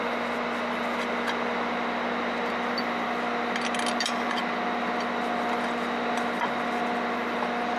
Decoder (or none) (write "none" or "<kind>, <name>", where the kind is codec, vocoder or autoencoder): none